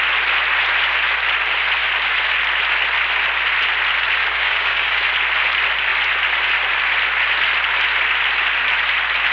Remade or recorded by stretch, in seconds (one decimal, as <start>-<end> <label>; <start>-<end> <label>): 0.0-4.2 recorded; 4.2-5.0 remade; 5.0-9.3 recorded